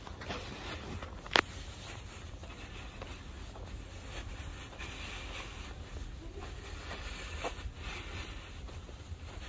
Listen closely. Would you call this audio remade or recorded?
recorded